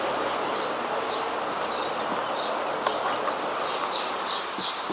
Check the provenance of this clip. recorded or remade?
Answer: recorded